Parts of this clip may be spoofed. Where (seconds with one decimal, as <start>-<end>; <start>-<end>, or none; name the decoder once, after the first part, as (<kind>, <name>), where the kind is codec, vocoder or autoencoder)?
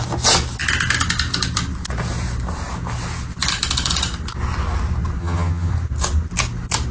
5.2-5.7 (vocoder, HiFi-GAN)